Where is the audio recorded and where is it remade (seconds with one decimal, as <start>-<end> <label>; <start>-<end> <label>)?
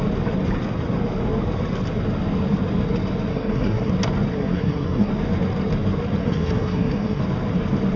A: 0.0-3.3 recorded; 3.3-3.9 remade; 3.9-4.3 recorded; 4.3-5.1 remade; 5.1-6.2 recorded; 6.2-7.2 remade; 7.2-8.0 recorded